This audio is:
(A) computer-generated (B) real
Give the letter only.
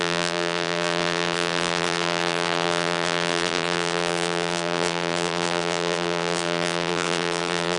A